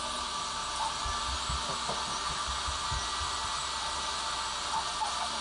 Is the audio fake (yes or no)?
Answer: no